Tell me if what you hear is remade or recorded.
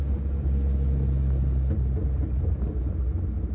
recorded